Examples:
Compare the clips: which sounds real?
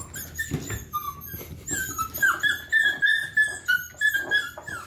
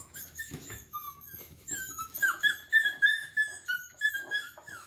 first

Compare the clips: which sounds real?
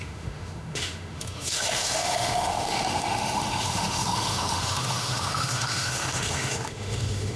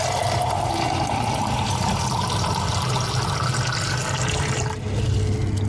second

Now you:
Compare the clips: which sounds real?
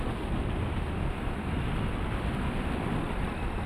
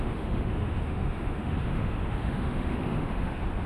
first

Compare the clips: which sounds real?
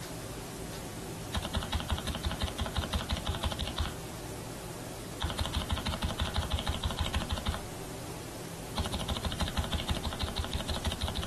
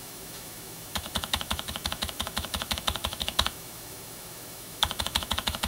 first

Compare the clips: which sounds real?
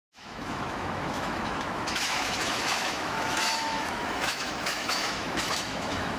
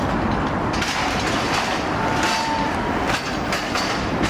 second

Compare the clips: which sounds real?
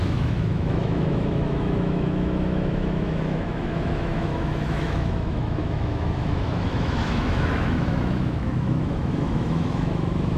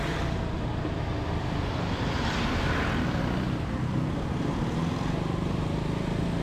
second